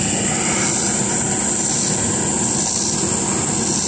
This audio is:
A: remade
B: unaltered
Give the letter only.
B